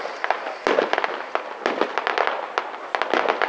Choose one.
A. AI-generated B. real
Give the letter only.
B